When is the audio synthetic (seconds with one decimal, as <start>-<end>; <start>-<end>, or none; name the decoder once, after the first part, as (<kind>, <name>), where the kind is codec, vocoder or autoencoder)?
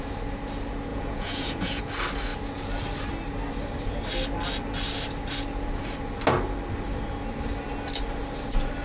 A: 0.9-1.8 (vocoder, Vocos)